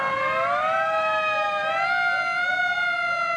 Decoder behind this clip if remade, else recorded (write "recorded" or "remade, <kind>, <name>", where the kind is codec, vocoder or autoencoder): recorded